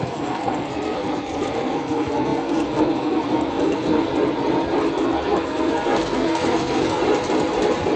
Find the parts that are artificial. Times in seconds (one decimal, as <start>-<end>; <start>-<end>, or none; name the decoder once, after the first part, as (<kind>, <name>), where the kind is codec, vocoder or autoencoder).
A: 0.0-4.1 (codec, SNAC); 4.9-7.0